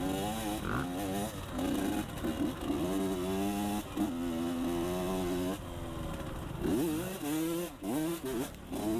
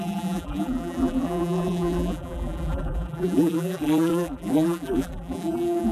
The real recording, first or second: first